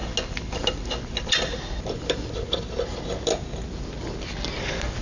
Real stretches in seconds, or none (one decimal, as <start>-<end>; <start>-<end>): 0.0-5.0